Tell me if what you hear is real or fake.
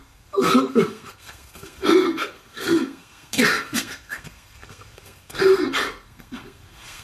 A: fake